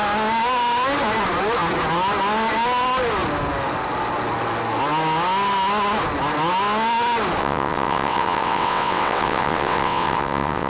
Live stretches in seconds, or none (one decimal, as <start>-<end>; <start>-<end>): 0.0-7.4